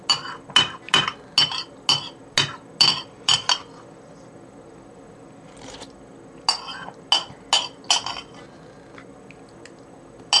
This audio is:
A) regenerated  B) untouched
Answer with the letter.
B